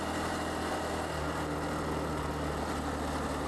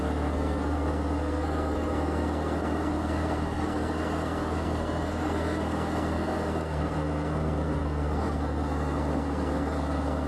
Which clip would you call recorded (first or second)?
first